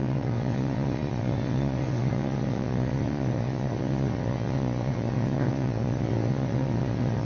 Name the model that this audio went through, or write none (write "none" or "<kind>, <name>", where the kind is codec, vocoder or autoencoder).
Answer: vocoder, WaveNeXt